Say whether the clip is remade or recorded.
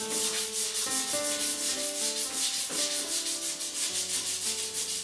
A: recorded